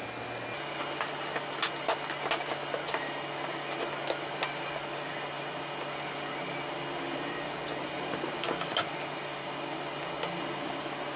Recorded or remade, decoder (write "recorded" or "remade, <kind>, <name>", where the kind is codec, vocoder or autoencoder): recorded